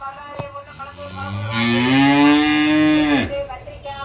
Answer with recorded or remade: recorded